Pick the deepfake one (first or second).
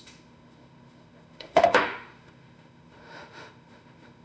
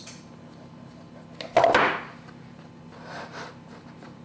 first